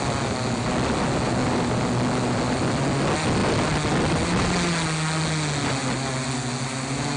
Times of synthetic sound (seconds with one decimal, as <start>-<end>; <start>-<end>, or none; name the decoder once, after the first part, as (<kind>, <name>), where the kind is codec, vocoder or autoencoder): none